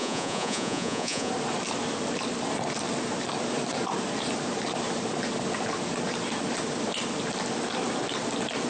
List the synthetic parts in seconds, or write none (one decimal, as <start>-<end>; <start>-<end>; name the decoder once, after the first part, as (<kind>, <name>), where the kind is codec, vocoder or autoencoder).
0.0-1.3 (vocoder, Vocos)